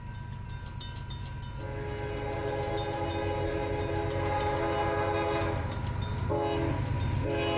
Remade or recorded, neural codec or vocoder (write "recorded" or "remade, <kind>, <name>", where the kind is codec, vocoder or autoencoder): recorded